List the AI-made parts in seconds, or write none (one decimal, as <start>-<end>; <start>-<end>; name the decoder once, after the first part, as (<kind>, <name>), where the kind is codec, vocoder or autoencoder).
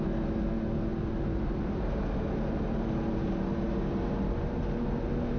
none